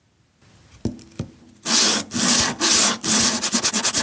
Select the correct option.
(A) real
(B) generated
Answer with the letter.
A